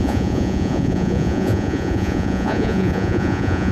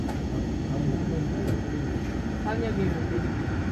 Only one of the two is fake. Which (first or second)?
first